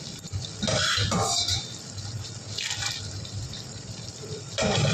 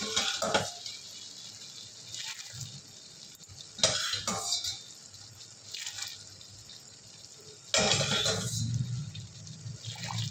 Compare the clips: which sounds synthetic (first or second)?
first